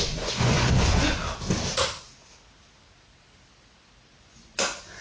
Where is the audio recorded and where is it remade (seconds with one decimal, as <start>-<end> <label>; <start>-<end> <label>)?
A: 0.0-1.2 remade; 1.2-4.2 recorded; 4.2-5.0 remade